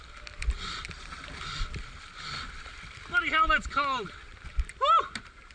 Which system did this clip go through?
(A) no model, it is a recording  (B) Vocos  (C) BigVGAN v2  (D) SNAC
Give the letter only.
A